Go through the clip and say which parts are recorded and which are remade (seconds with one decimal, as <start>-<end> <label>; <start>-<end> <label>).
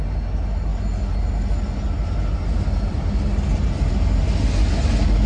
0.0-5.3 recorded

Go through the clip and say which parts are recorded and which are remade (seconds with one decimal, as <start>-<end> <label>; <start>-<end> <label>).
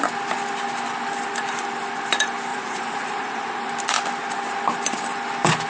0.0-2.5 recorded; 2.5-3.7 remade; 3.7-5.7 recorded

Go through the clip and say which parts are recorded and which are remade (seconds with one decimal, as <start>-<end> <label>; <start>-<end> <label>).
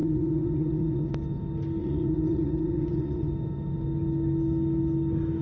0.0-1.1 remade; 1.1-1.8 recorded; 1.8-3.3 remade; 3.3-5.4 recorded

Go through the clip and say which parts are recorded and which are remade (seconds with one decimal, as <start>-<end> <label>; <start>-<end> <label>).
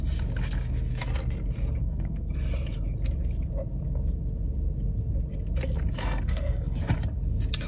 0.0-1.8 recorded; 1.8-2.3 remade; 2.3-6.0 recorded; 6.0-6.8 remade; 6.8-7.7 recorded